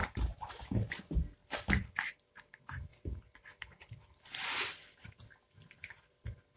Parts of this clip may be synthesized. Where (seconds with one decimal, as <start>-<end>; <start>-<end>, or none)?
0.0-0.5; 2.9-6.1